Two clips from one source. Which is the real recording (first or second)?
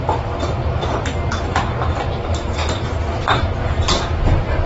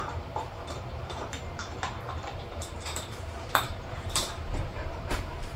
first